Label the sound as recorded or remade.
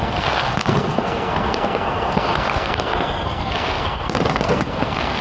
remade